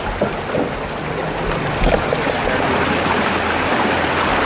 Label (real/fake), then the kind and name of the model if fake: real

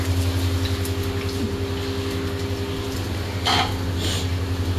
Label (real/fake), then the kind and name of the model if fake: real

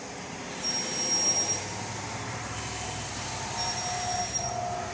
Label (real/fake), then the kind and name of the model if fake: real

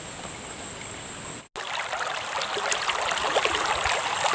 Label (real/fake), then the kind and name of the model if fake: real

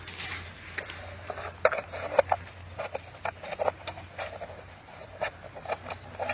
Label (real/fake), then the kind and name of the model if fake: real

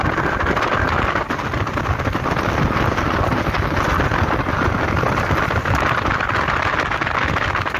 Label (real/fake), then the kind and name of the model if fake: real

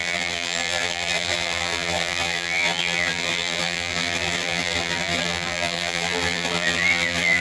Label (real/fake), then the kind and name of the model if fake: fake, vocoder, BigVGAN v2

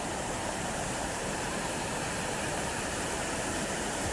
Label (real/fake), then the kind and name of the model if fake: fake, vocoder, BigVGAN v2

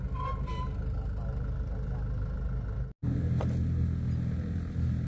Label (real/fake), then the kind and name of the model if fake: real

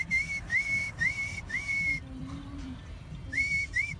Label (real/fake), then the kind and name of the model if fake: fake, vocoder, BigVGAN v2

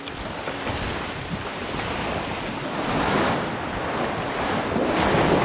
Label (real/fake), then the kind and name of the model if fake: real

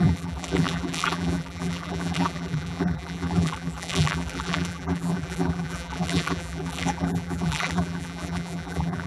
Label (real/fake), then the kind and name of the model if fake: fake, vocoder, BigVGAN v2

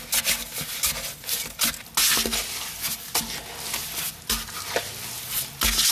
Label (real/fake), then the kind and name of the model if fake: real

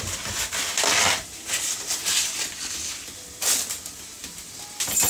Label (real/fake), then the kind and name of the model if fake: real